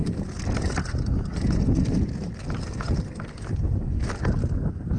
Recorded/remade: recorded